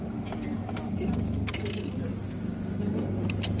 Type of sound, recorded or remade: recorded